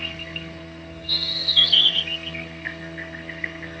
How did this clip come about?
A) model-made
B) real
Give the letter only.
A